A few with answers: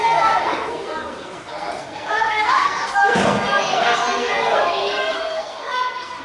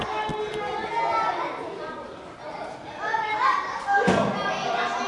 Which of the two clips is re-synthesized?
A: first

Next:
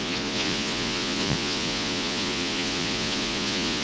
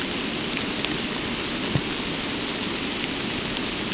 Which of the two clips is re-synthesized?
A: first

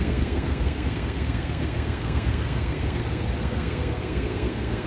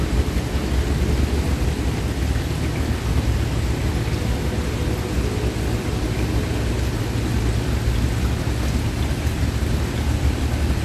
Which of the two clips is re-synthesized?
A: first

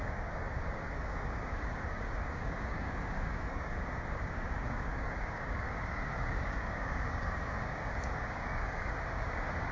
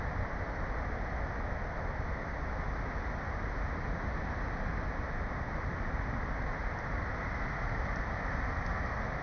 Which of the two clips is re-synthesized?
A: first